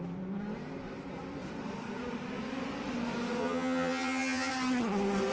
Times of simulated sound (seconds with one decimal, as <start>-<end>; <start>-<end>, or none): 3.4-4.5